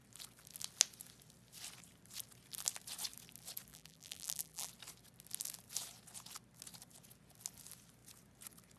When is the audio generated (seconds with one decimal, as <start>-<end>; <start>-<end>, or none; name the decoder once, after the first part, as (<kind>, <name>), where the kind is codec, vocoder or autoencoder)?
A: 3.7-4.7 (vocoder, BigVGAN v2)